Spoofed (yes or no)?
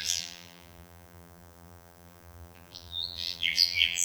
yes